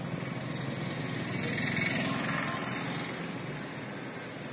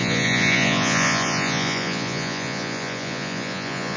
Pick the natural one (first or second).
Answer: first